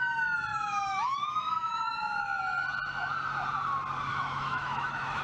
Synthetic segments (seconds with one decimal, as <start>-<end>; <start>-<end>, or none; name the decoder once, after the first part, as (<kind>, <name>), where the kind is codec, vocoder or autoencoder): 0.5-2.4 (autoencoder, DAC-VAE); 4.1-5.2